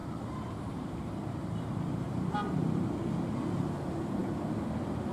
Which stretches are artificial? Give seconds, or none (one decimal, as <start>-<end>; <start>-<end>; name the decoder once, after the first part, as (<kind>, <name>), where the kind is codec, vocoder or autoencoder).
0.0-2.9 (vocoder, BigVGAN v2)